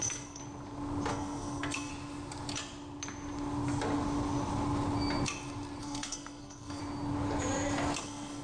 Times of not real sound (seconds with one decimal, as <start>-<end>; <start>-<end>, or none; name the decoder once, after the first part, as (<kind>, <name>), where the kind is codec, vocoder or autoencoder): 0.0-0.4 (codec, SNAC); 1.1-1.9; 5.8-6.8; 8.0-8.4